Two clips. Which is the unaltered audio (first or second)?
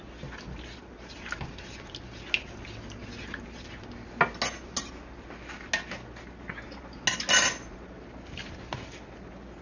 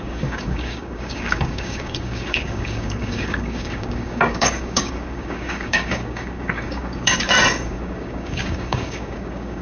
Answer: first